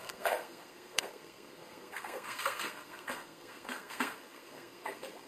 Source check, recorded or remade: remade